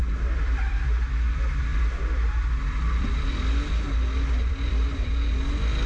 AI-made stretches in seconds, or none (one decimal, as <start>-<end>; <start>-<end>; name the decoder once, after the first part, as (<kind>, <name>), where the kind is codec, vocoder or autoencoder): none

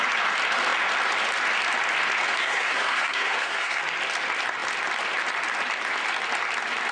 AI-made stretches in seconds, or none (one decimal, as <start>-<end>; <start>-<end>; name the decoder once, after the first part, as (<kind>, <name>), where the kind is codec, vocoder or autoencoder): 2.4-3.8 (codec, SNAC)

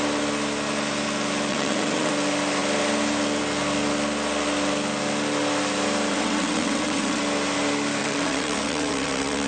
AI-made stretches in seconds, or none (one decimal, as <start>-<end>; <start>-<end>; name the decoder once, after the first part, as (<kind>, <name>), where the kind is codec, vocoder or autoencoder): 1.5-2.1 (vocoder, WaveNeXt); 6.1-7.2; 8.0-9.5